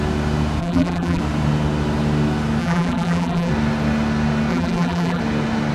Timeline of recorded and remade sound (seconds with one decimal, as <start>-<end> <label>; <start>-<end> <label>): 0.0-0.6 recorded; 0.6-1.2 remade; 1.2-2.6 recorded; 2.6-3.5 remade; 3.5-4.5 recorded; 4.5-5.2 remade; 5.2-5.7 recorded